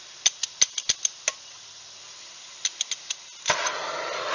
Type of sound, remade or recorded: recorded